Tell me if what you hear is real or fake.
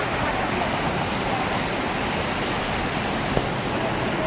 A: real